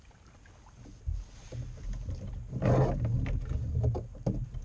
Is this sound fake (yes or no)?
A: no